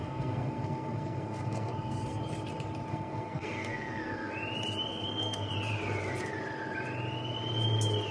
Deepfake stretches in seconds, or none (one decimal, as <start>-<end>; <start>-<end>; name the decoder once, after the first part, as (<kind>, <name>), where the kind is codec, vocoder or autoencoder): 0.0-2.2 (codec, SNAC); 2.9-4.3; 4.9-5.5